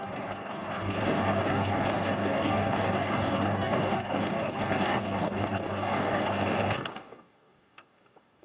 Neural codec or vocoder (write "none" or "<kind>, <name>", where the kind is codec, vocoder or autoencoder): codec, DAC